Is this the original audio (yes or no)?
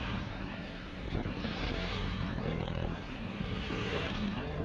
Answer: no